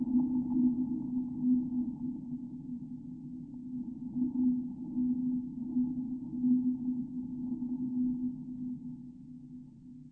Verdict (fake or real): real